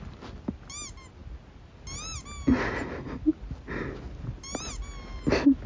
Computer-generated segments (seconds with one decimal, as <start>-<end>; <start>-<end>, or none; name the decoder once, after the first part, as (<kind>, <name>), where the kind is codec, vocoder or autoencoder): none